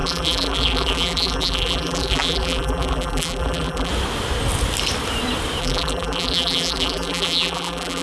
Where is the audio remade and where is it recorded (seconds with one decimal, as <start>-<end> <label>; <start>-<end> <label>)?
0.0-3.9 remade; 3.9-5.6 recorded; 5.6-8.0 remade